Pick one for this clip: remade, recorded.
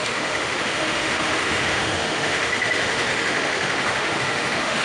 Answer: remade